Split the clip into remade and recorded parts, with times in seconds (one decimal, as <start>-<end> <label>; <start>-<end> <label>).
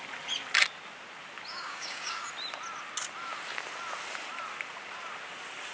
0.0-1.5 recorded; 1.5-2.3 remade; 2.3-5.7 recorded